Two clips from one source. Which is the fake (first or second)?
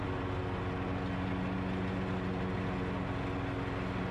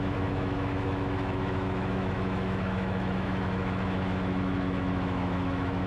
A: second